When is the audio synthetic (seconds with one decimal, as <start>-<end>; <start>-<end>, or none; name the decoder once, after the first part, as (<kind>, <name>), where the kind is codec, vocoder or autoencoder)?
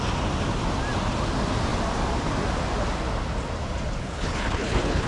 4.0-5.1 (codec, HILCodec)